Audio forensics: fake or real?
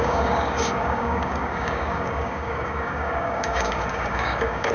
fake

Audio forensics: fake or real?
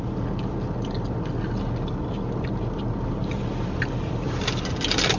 real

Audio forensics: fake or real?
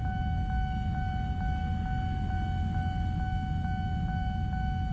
real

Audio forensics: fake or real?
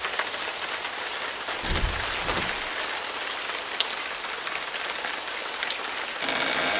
real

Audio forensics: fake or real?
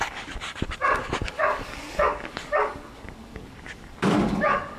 fake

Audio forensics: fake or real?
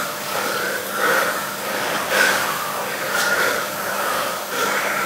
fake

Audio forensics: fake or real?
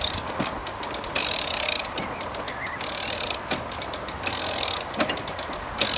real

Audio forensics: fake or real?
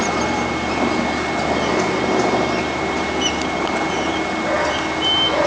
real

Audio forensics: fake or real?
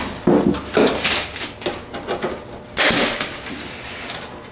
real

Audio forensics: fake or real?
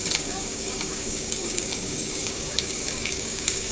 fake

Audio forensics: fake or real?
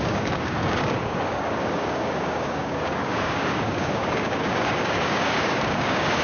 fake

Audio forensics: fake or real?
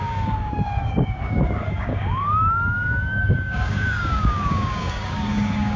fake